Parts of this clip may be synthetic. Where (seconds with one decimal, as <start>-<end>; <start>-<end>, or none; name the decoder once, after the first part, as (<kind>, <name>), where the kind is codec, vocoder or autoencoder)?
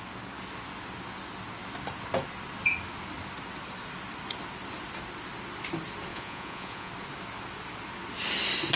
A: 6.1-6.9 (vocoder, Vocos)